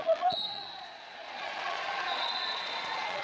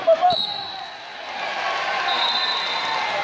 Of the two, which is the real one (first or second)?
second